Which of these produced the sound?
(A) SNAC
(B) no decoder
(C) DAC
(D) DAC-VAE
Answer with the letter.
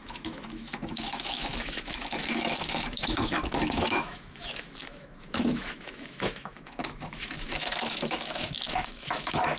D